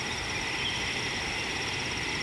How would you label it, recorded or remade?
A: recorded